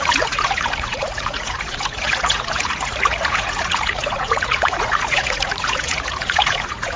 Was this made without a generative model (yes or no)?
no